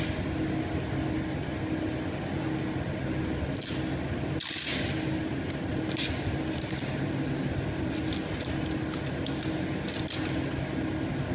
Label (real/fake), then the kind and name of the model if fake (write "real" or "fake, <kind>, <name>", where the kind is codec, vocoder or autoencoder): real